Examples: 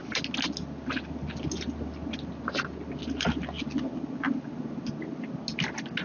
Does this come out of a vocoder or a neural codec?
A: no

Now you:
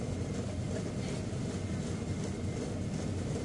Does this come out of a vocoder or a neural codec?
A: no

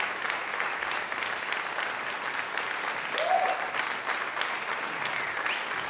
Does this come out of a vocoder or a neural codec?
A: no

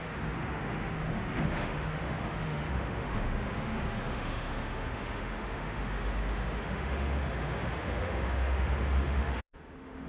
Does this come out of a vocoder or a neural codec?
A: yes